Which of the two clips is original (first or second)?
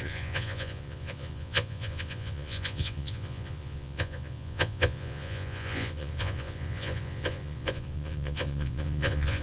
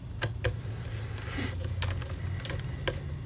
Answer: second